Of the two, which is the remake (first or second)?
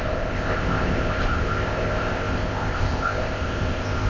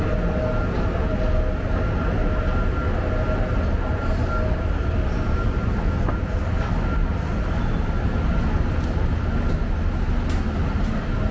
first